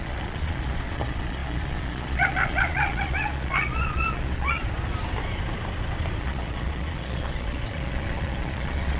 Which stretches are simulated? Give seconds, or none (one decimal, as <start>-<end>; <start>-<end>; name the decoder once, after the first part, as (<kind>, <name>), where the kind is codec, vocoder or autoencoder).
0.0-4.6 (vocoder, Vocos); 6.2-9.0

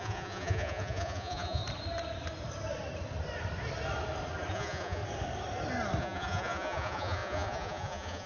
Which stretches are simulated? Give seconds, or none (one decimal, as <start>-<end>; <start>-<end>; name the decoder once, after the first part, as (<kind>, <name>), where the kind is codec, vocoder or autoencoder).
0.0-1.6 (vocoder, Vocos); 4.5-5.0; 6.0-8.3

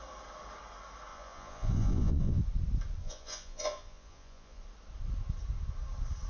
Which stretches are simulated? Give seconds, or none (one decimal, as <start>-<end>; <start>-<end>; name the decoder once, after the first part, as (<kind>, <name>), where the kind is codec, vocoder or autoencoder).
1.1-2.4 (vocoder, Vocos); 3.0-4.6

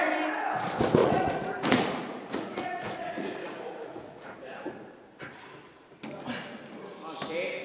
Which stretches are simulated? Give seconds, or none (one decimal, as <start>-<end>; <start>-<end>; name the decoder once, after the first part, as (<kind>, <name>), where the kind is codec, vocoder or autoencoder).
1.0-4.9 (vocoder, Vocos)

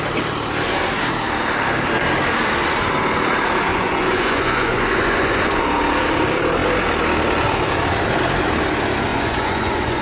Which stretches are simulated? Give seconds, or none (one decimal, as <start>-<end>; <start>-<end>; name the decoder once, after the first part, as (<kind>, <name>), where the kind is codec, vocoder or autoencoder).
3.7-5.6 (vocoder, Vocos); 9.1-10.0

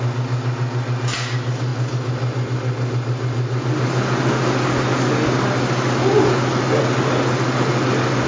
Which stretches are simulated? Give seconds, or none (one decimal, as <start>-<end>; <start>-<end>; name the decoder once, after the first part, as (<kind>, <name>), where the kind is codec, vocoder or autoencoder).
none

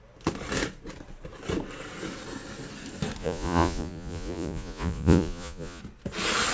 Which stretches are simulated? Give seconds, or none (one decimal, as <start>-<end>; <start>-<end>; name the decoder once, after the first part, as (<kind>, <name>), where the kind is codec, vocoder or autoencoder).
3.2-5.8 (vocoder, Vocos)

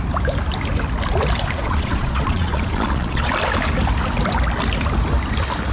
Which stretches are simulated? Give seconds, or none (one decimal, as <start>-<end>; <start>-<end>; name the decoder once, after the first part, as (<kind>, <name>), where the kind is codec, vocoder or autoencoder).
1.6-3.3 (vocoder, Vocos)